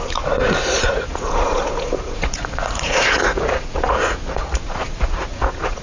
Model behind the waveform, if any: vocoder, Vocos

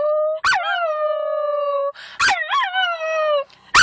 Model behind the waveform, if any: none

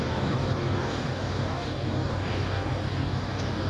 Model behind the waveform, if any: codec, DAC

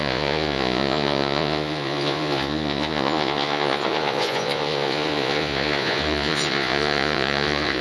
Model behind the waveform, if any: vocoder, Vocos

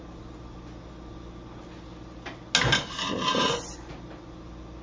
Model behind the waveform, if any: none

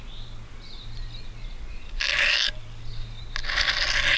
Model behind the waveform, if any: none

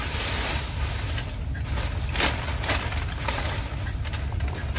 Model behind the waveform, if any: none